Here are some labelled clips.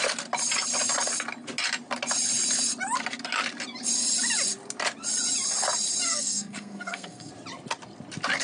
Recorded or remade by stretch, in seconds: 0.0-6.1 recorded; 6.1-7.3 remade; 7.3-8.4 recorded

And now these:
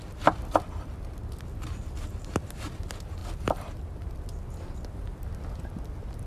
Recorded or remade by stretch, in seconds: 0.0-3.2 recorded; 3.2-3.9 remade; 3.9-6.3 recorded

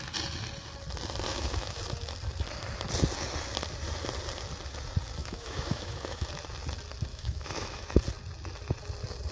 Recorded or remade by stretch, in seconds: 0.0-1.3 recorded; 1.3-1.8 remade; 1.8-5.2 recorded; 5.2-6.3 remade; 6.3-7.1 recorded; 7.1-8.0 remade; 8.0-9.3 recorded

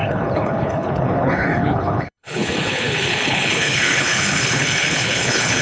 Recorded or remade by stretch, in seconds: 0.0-5.6 remade

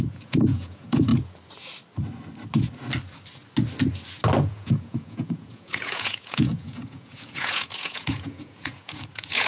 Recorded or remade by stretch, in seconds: 0.0-1.1 remade; 1.1-4.4 recorded; 4.4-9.5 remade

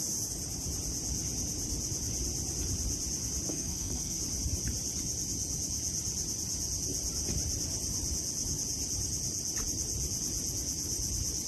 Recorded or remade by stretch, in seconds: 0.0-3.5 recorded; 3.5-4.2 remade; 4.2-11.5 recorded

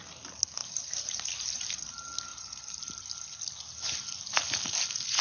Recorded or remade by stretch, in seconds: 0.0-0.6 recorded; 0.6-1.9 remade; 1.9-2.3 recorded; 2.3-3.0 remade; 3.0-5.2 recorded

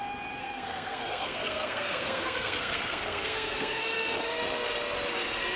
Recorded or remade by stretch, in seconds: 0.0-0.4 recorded; 0.4-3.8 remade; 3.8-5.6 recorded